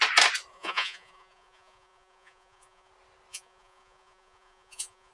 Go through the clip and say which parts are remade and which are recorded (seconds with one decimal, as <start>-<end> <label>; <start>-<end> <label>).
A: 0.0-0.5 recorded; 0.5-2.9 remade; 2.9-3.3 recorded; 3.3-5.1 remade